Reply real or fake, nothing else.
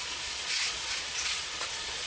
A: fake